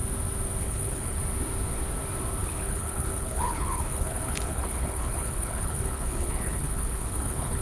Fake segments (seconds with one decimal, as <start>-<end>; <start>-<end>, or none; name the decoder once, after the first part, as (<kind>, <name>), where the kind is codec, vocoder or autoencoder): 0.6-1.2 (codec, HILCodec); 2.4-7.6